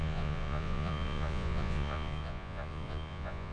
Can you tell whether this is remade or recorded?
remade